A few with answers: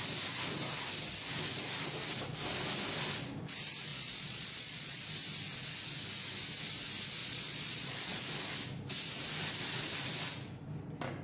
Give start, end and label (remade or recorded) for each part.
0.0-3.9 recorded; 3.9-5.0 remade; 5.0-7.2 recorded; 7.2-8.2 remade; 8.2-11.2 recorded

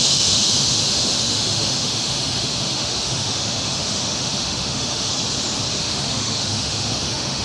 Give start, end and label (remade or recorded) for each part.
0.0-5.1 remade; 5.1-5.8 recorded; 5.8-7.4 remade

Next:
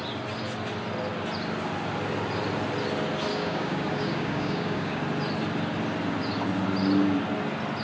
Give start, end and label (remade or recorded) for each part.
0.0-3.3 recorded; 3.3-5.0 remade; 5.0-7.8 recorded